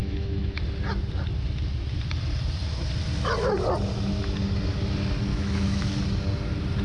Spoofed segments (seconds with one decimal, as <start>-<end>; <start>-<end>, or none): 0.0-0.6; 5.3-6.0